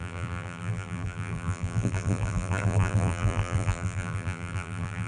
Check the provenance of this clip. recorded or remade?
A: remade